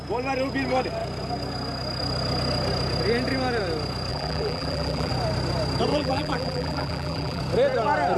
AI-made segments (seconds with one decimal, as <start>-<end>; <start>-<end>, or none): 4.1-5.1; 5.9-7.4